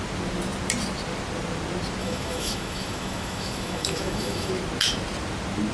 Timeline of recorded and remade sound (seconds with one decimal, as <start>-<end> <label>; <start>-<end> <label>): 0.0-2.0 recorded; 2.0-4.5 remade; 4.5-5.7 recorded